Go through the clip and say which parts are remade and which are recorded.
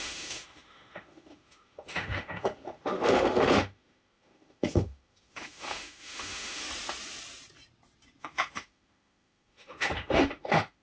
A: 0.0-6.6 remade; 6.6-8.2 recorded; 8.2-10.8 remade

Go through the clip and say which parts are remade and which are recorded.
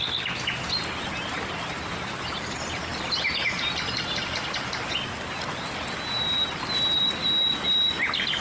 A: 0.0-8.4 recorded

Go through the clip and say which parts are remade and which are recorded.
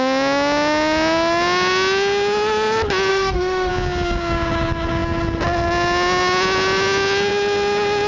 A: 0.0-3.1 recorded; 3.1-3.7 remade; 3.7-8.1 recorded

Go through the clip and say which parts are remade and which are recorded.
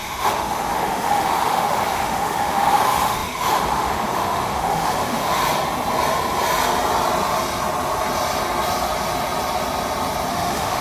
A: 0.0-5.4 remade; 5.4-10.3 recorded; 10.3-10.8 remade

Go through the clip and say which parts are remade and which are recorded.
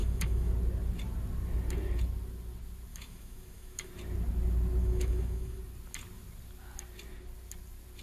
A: 0.0-0.5 remade; 0.5-2.9 recorded; 2.9-3.9 remade; 3.9-4.8 recorded; 4.8-5.6 remade; 5.6-8.0 recorded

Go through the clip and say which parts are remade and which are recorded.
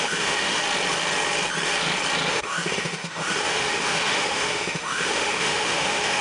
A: 0.0-0.6 remade; 0.6-2.3 recorded; 2.3-6.2 remade